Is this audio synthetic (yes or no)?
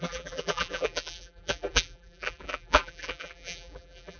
yes